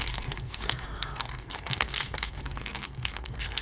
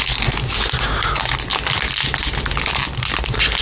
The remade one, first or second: first